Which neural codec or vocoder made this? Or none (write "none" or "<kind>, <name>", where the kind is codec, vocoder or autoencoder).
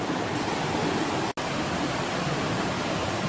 vocoder, BigVGAN v2